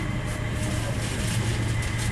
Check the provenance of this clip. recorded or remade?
recorded